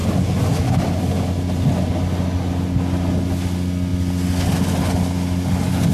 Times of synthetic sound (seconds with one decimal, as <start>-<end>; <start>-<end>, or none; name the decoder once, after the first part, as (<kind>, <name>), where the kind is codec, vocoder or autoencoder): none